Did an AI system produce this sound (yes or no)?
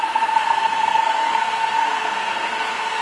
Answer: yes